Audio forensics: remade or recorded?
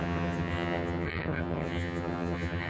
remade